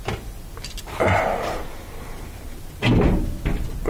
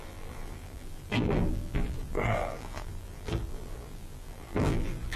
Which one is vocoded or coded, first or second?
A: second